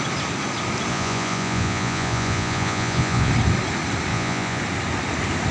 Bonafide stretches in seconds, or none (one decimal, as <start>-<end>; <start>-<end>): 0.0-0.9; 3.3-4.1; 4.6-5.5